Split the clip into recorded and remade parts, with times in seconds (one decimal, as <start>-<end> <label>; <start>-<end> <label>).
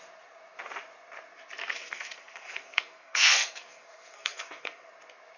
0.0-1.7 recorded; 1.7-4.9 remade; 4.9-5.4 recorded